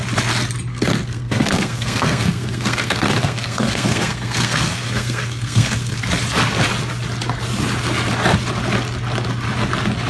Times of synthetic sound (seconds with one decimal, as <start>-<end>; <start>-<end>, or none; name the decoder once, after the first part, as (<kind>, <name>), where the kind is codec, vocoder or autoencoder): 0.7-6.0 (codec, SNAC)